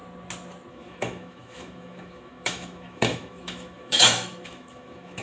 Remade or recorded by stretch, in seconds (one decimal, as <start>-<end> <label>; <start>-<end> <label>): 0.0-0.7 recorded; 0.7-5.2 remade